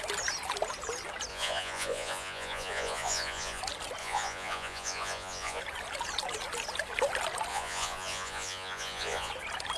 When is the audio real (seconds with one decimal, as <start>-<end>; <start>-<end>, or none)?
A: 0.0-1.3; 3.6-4.0; 5.6-7.5; 9.3-9.8